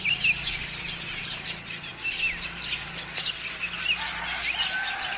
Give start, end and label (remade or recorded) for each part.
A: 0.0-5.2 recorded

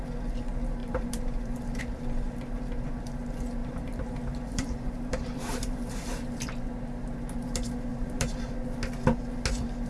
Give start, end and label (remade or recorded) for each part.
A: 0.0-0.8 recorded; 0.8-1.8 remade; 1.8-3.6 recorded; 3.6-6.4 remade; 6.4-7.9 recorded; 7.9-8.5 remade; 8.5-9.9 recorded

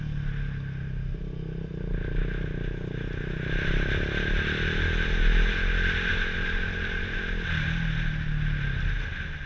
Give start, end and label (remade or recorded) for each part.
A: 0.0-6.1 recorded; 6.1-7.2 remade; 7.2-9.5 recorded